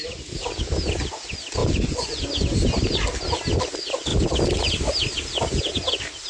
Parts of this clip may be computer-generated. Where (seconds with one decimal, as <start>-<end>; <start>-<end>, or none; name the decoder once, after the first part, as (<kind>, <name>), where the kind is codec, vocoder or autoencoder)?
1.6-2.2 (vocoder, Vocos)